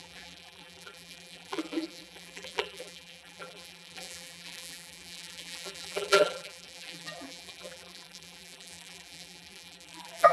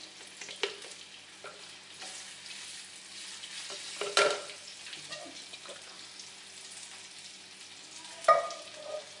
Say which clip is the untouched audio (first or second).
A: second